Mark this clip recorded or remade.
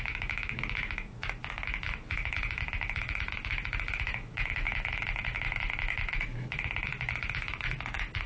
remade